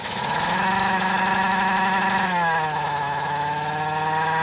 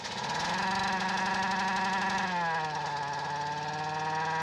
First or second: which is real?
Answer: second